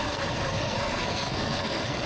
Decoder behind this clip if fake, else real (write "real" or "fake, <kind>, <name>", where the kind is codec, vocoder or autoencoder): fake, codec, SNAC